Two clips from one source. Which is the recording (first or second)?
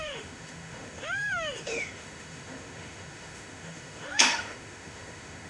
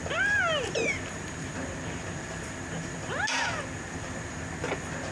second